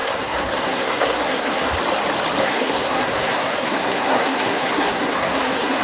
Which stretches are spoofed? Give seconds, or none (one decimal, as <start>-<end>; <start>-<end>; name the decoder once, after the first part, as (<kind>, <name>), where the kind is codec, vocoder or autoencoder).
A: 0.0-1.7 (codec, SNAC); 2.4-5.8